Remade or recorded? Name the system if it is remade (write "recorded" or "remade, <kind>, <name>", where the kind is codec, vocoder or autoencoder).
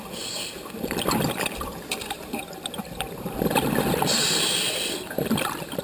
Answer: remade, vocoder, BigVGAN v2